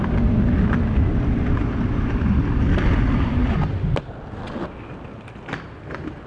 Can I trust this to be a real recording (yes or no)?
yes